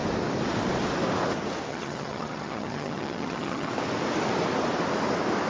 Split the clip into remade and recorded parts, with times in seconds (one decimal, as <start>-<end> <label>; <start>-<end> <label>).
0.0-1.7 recorded; 1.7-3.7 remade; 3.7-5.5 recorded